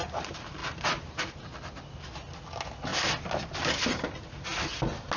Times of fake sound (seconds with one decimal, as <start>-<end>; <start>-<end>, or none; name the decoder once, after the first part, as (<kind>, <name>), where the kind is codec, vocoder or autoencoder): 0.6-1.2 (vocoder, BigVGAN v2)